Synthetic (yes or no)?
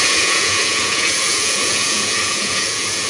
yes